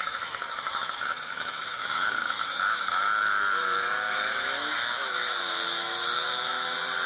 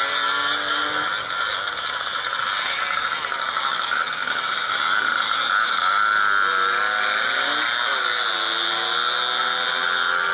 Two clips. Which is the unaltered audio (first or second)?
second